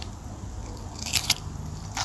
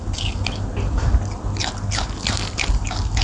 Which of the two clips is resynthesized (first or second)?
first